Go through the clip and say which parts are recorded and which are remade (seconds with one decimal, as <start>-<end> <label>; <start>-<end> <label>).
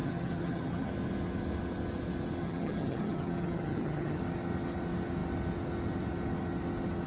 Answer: 0.0-0.9 remade; 0.9-2.4 recorded; 2.4-4.2 remade; 4.2-7.1 recorded